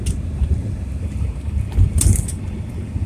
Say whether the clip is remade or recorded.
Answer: recorded